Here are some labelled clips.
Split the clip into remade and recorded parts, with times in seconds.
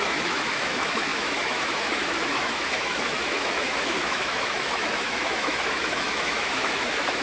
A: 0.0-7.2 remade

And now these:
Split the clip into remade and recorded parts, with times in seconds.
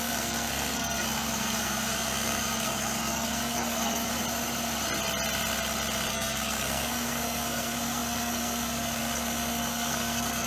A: 0.0-4.2 remade; 4.2-6.1 recorded; 6.1-10.5 remade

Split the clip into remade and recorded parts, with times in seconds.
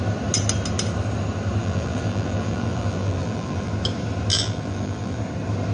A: 0.0-1.6 recorded; 1.6-3.7 remade; 3.7-4.3 recorded; 4.3-5.2 remade; 5.2-5.7 recorded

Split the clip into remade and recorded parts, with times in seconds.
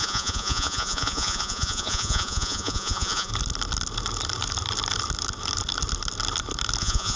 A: 0.0-3.3 remade; 3.3-6.8 recorded; 6.8-7.2 remade